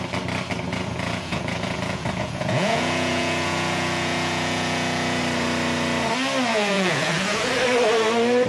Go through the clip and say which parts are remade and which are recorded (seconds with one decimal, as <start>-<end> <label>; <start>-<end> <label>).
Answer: 0.0-0.7 recorded; 0.7-5.2 remade; 5.2-6.5 recorded; 6.5-7.5 remade; 7.5-8.5 recorded